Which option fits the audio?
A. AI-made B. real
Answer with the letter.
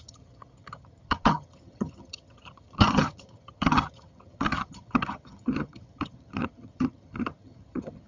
A